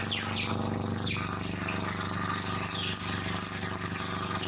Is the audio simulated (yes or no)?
no